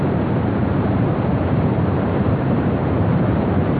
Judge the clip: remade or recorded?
remade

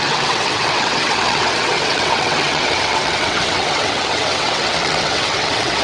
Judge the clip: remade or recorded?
remade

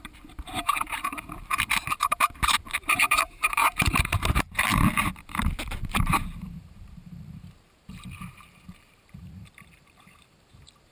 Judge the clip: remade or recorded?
remade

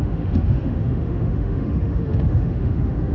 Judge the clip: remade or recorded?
remade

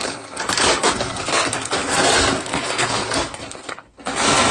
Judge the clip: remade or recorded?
remade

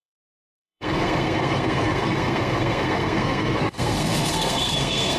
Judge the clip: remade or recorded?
remade